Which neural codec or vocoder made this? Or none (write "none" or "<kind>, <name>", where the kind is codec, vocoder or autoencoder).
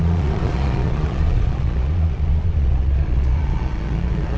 vocoder, Vocos